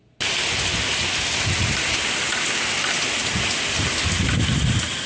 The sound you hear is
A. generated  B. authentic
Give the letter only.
B